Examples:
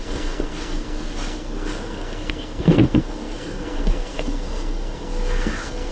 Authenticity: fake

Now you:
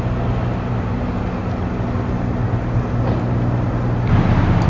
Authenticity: real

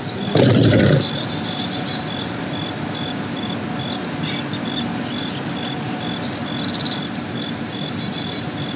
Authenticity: real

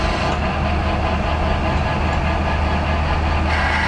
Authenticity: real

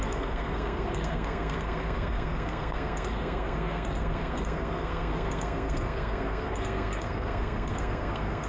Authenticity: fake